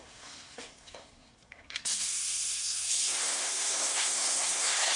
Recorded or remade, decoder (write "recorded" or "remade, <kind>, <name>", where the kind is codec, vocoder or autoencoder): remade, codec, SNAC